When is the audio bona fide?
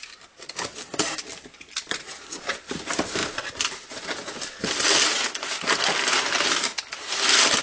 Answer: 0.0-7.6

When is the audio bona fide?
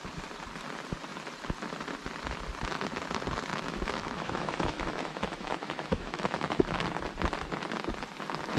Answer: 0.0-3.5; 6.8-8.6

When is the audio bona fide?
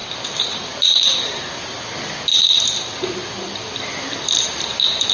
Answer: 0.0-5.1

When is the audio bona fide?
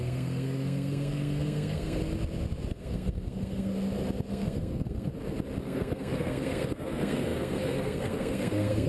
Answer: 2.0-2.7; 3.7-4.3; 5.1-5.6